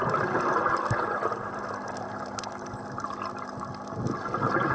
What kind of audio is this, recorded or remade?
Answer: recorded